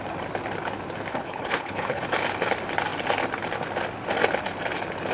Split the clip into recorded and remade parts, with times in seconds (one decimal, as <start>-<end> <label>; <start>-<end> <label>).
0.0-1.1 recorded; 1.1-2.0 remade; 2.0-5.1 recorded